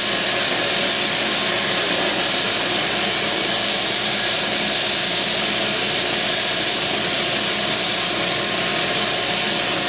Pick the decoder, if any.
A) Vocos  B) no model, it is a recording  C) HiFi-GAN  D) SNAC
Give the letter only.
B